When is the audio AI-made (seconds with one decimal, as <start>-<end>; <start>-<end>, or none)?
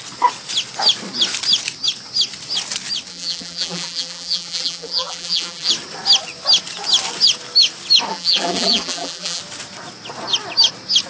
3.1-5.7; 8.1-9.4